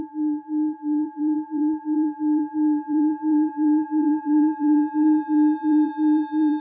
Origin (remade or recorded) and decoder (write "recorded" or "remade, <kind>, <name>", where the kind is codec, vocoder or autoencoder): remade, vocoder, BigVGAN v2